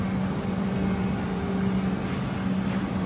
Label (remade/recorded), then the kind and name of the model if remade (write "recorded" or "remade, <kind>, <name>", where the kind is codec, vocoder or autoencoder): recorded